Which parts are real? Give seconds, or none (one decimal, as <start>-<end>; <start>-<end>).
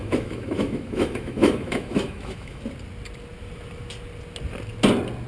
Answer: 2.6-5.3